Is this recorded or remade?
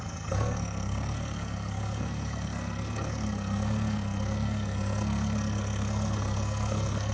remade